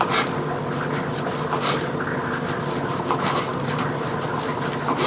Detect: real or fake real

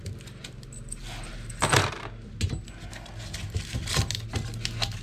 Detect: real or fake real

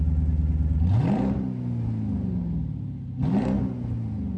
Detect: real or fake real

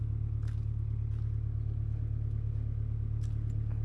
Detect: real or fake real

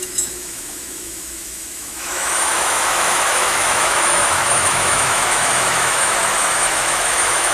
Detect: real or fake fake